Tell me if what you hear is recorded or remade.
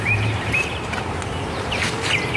remade